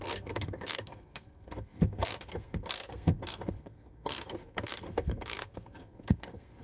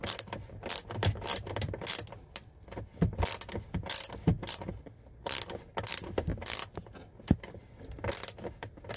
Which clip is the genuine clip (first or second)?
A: second